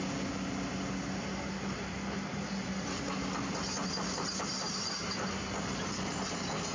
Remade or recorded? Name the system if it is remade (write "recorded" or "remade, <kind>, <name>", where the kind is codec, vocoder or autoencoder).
recorded